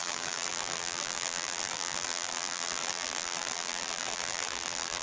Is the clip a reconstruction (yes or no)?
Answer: yes